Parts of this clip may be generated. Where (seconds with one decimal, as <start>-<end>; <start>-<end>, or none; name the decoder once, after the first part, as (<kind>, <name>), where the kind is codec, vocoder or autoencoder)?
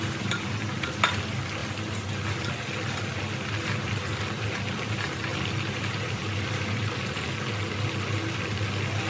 none